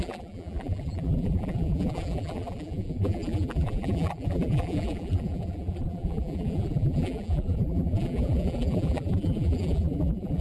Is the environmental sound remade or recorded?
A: remade